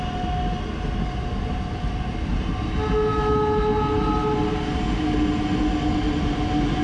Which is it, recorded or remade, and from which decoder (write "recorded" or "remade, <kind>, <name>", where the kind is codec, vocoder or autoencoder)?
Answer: recorded